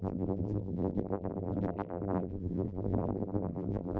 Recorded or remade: remade